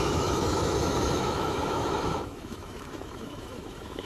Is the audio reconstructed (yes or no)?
yes